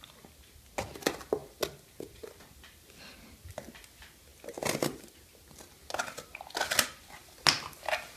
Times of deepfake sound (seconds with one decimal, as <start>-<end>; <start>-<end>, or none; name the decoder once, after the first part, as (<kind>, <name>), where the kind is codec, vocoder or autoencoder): none